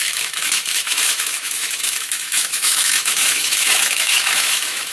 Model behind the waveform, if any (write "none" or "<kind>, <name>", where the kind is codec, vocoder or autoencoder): autoencoder, DAC-VAE